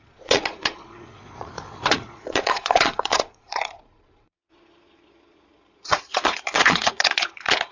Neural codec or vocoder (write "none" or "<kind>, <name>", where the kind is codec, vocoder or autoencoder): vocoder, Vocos